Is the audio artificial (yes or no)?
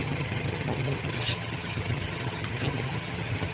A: yes